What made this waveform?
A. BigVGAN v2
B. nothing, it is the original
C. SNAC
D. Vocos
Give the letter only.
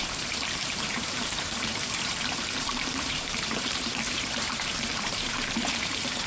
A